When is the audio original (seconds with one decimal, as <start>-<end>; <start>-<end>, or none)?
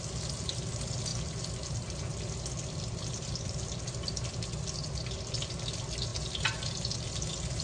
0.0-7.6